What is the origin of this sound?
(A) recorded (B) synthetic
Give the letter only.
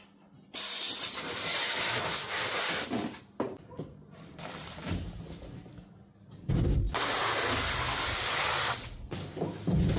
A